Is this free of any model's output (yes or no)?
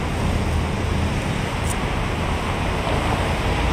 yes